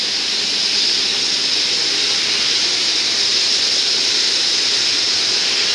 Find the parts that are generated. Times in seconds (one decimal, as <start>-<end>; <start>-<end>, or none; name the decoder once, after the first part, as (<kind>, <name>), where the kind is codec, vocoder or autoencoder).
none